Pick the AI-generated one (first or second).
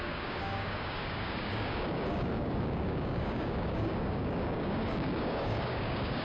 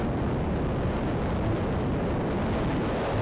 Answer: first